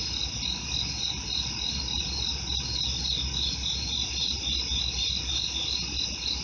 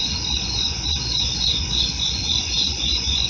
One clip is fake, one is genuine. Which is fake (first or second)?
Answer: second